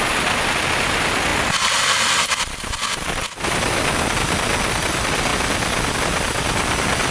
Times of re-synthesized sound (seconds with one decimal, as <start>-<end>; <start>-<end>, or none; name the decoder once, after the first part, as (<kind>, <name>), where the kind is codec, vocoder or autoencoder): none